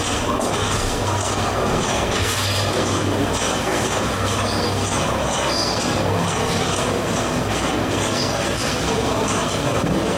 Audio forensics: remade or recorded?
remade